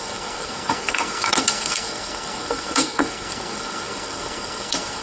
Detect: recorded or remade remade